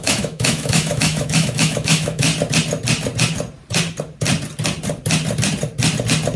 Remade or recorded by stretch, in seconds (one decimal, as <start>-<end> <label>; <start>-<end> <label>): 0.0-2.3 remade; 2.3-6.4 recorded

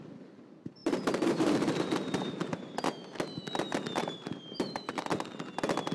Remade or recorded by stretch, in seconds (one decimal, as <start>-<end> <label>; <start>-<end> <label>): 0.0-0.8 recorded; 0.8-2.8 remade; 2.8-4.0 recorded; 4.0-4.9 remade; 4.9-5.9 recorded

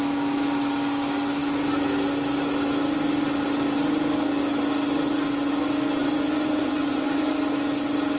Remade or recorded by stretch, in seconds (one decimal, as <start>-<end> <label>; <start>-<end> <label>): 0.0-6.0 recorded; 6.0-7.3 remade; 7.3-8.2 recorded

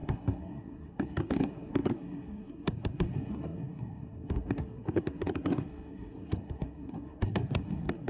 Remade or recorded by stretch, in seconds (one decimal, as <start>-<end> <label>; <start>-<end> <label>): 0.0-8.1 remade

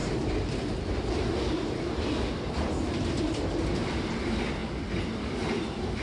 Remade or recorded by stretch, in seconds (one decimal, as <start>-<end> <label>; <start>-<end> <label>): 0.0-3.2 recorded; 3.2-4.6 remade; 4.6-5.2 recorded; 5.2-6.0 remade

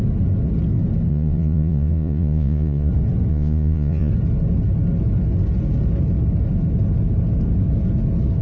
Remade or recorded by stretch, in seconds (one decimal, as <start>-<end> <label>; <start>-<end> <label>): 0.0-1.1 recorded; 1.1-2.9 remade; 2.9-3.3 recorded; 3.3-4.1 remade; 4.1-8.4 recorded

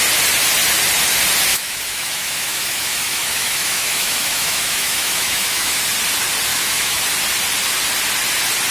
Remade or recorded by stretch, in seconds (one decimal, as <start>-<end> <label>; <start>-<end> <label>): 0.0-1.5 recorded; 1.5-5.8 remade; 5.8-6.5 recorded; 6.5-7.0 remade; 7.0-8.7 recorded